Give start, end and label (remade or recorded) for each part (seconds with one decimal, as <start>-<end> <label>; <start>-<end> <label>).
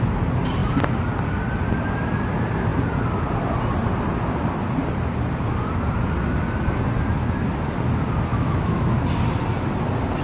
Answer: 0.0-8.3 recorded; 8.3-8.9 remade; 8.9-10.2 recorded